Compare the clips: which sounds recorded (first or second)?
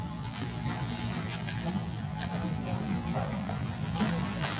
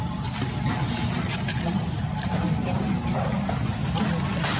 second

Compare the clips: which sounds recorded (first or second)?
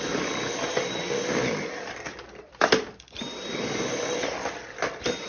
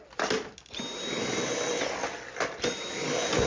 second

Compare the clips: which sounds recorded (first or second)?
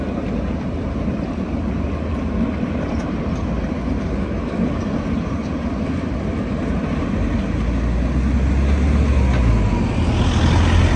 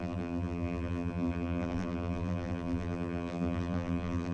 first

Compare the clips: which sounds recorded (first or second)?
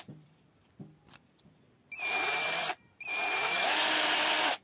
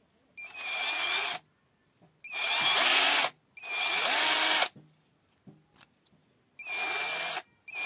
second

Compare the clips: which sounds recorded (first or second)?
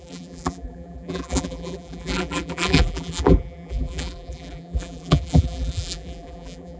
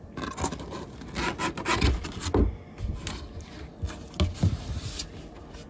second